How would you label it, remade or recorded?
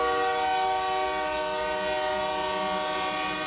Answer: recorded